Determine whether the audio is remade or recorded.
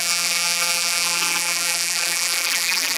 remade